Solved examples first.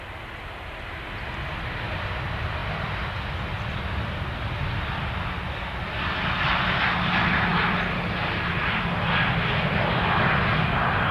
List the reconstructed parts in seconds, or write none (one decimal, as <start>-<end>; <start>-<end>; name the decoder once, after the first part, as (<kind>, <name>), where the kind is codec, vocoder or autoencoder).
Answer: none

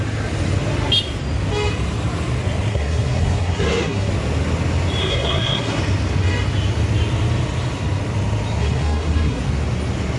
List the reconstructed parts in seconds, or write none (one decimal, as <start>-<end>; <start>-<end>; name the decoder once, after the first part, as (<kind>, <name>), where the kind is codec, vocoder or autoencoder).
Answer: 2.7-4.1 (codec, SNAC); 5.0-5.8; 8.6-9.4

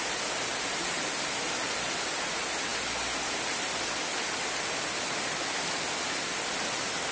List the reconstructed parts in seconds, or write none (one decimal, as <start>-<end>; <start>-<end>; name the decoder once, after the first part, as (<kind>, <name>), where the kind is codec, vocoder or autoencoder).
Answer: none

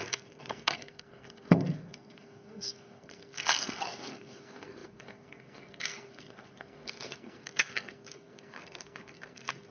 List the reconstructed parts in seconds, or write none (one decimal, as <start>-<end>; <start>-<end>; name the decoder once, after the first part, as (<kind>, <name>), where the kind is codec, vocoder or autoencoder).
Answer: 0.0-9.7 (codec, SNAC)